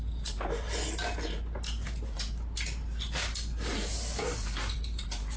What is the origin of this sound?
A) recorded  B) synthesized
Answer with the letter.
A